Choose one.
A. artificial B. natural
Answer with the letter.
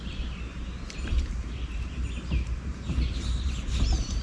A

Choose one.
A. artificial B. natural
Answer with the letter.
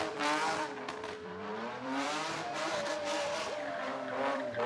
A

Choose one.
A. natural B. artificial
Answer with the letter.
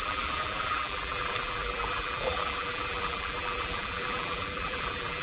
B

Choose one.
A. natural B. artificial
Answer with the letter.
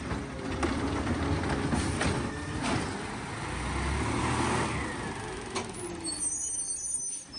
A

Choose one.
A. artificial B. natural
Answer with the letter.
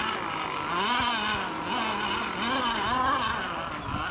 B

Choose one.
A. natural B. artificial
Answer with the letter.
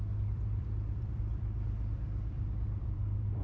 B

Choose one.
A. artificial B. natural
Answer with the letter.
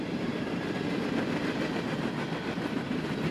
A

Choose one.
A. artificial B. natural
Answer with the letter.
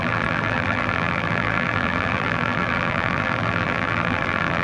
A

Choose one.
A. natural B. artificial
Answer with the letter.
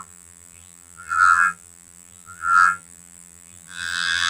B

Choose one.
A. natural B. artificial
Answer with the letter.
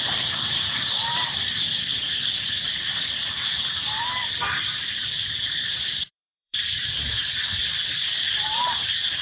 B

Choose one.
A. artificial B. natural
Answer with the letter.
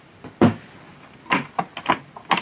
A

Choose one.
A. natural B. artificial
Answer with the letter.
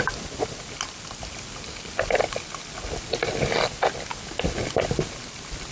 A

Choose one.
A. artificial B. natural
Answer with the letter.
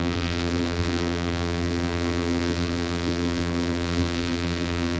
A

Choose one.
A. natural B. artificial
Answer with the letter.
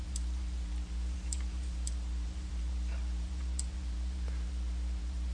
B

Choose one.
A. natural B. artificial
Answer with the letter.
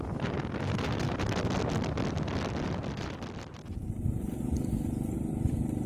B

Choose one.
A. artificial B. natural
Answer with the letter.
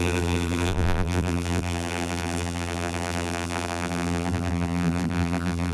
A